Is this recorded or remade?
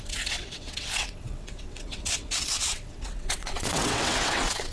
remade